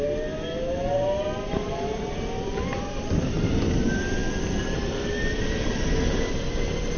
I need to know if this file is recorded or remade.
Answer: recorded